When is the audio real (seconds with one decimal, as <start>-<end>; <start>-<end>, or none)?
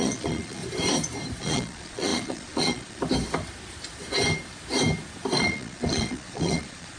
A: 0.6-1.4; 3.0-5.4